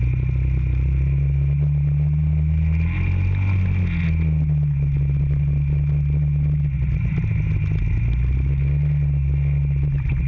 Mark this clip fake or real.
real